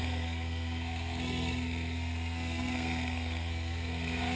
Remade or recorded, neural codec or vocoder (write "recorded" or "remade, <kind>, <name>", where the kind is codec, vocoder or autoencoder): remade, codec, SNAC